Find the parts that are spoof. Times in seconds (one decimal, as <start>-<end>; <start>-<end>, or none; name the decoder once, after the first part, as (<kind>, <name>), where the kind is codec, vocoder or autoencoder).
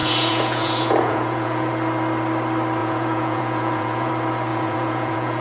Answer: 0.0-1.7 (vocoder, Vocos); 2.8-4.1; 4.5-5.4